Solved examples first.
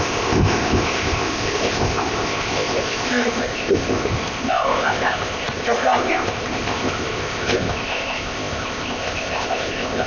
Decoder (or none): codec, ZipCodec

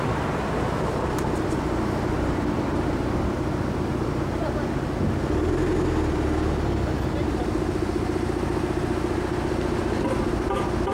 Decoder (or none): none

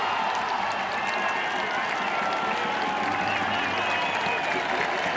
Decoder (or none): none